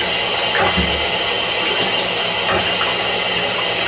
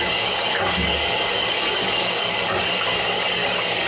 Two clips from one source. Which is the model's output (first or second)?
second